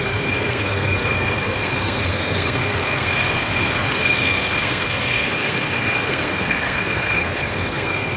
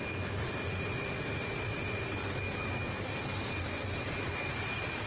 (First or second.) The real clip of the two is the second